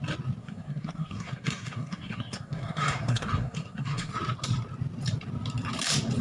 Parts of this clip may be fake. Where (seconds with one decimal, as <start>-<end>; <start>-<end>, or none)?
0.4-4.1